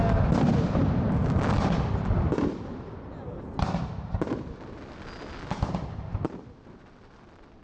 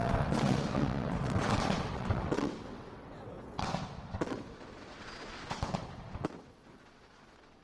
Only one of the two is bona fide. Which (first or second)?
first